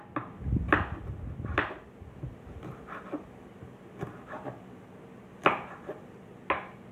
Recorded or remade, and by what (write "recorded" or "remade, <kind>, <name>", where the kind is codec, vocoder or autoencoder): recorded